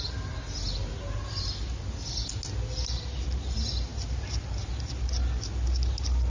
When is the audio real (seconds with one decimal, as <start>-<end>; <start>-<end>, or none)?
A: 0.0-6.3